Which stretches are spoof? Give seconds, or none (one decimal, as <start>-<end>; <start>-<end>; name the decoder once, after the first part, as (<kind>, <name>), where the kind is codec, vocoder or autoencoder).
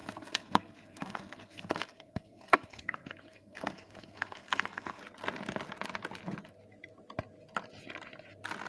0.0-5.0 (codec, SNAC)